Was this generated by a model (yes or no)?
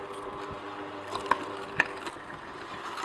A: no